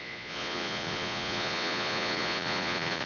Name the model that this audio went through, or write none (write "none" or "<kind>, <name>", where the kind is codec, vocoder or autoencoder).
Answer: vocoder, Vocos